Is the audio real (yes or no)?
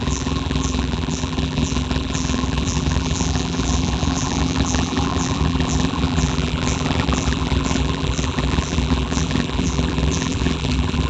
no